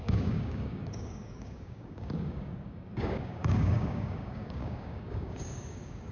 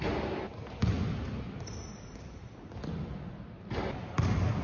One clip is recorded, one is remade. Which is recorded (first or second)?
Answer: second